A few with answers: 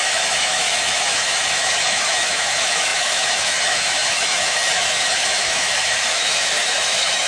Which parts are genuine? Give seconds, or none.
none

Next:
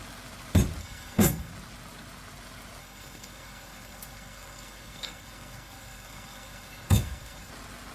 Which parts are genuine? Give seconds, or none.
0.0-0.8; 1.5-2.8; 7.5-7.9